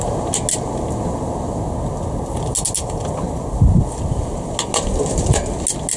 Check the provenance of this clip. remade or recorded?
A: recorded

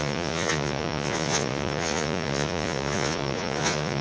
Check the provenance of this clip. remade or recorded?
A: remade